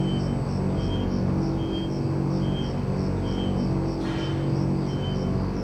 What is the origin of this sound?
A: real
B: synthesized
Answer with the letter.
A